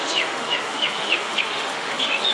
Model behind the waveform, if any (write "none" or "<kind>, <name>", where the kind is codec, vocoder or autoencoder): autoencoder, DAC-VAE